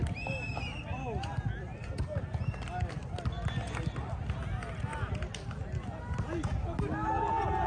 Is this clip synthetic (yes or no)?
no